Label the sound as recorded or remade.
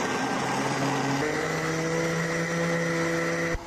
recorded